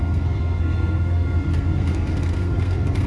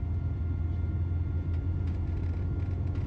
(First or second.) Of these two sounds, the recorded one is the second